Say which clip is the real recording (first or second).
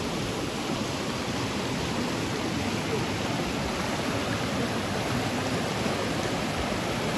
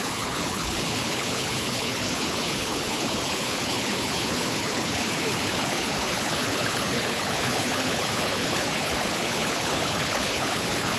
first